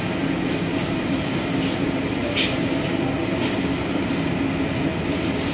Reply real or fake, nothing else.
real